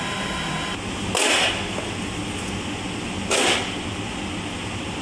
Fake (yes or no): no